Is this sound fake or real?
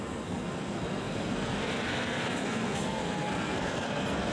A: fake